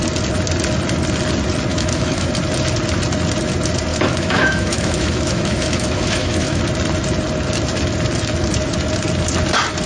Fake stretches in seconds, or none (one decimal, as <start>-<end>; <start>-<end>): 1.7-2.3; 3.9-6.6